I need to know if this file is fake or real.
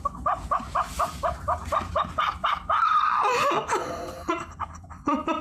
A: fake